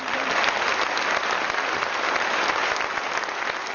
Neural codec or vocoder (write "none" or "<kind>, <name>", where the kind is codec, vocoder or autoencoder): none